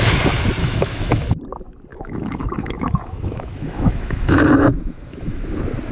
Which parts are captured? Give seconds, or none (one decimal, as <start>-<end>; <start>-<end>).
0.0-0.6; 1.2-1.9; 5.4-5.9

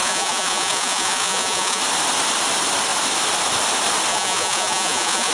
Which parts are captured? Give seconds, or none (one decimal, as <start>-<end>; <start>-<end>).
1.8-4.1

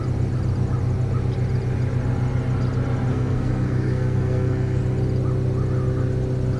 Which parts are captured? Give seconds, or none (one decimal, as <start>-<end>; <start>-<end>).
0.0-3.1; 4.8-6.6

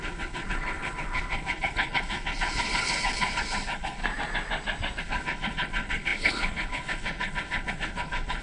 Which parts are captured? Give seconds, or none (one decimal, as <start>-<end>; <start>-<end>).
4.0-5.0

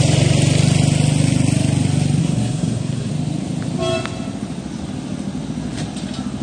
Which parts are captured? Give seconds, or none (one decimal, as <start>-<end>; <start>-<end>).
0.0-2.2; 3.1-6.4

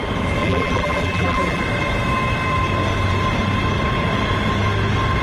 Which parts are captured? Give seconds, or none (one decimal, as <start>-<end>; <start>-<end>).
0.0-0.4; 1.6-5.2

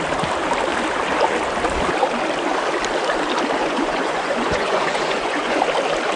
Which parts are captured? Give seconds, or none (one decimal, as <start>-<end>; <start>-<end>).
0.0-3.6; 5.6-6.2